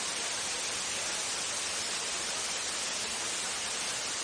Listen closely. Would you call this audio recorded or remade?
recorded